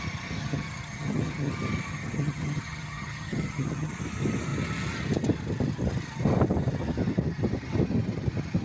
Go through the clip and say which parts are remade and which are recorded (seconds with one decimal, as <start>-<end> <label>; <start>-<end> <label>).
0.0-0.4 recorded; 0.4-1.5 remade; 1.5-1.9 recorded; 1.9-3.9 remade; 3.9-8.6 recorded